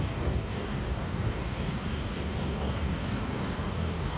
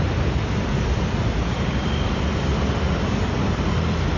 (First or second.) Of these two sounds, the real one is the second